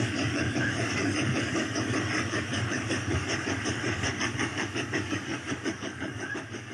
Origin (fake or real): fake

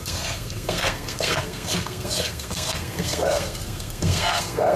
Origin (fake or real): fake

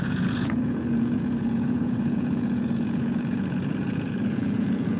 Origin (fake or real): fake